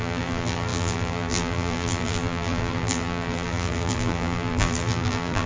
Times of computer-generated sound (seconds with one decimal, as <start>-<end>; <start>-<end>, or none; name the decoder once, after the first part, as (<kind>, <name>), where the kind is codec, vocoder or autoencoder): 0.0-5.5 (vocoder, BigVGAN v2)